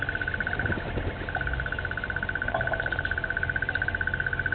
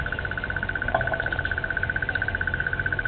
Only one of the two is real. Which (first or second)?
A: first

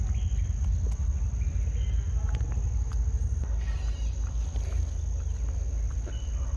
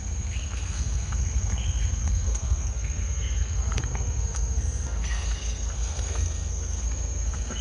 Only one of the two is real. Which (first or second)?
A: first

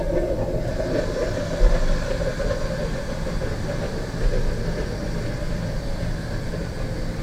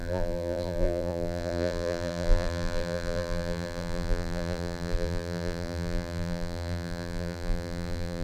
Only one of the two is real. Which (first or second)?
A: first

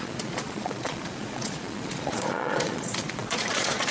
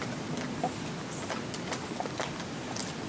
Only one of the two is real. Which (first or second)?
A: second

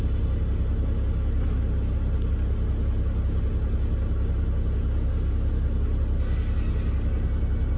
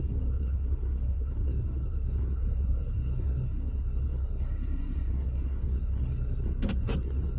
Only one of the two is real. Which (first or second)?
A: first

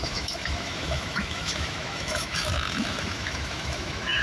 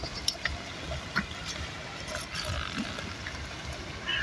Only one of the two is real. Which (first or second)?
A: second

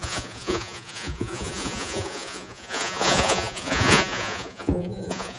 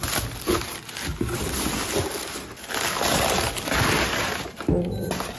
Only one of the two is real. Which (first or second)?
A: second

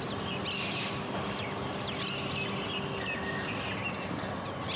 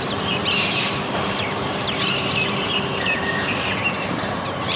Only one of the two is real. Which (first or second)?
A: first